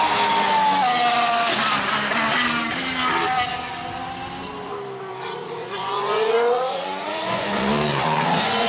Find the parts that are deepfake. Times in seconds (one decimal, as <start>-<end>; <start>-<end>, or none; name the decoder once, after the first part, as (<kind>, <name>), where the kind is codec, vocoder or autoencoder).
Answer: 5.6-8.7 (vocoder, Vocos)